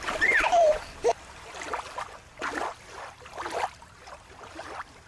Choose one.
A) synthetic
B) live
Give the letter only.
A